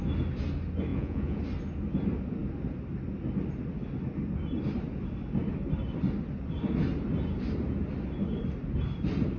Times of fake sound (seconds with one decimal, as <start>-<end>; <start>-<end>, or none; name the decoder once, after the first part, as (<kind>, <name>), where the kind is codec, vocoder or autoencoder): 0.9-1.4 (vocoder, Vocos)